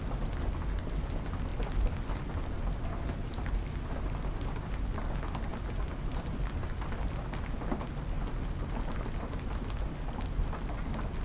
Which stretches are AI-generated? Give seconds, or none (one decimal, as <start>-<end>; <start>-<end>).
none